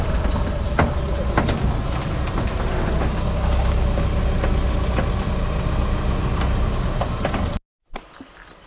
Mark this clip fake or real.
real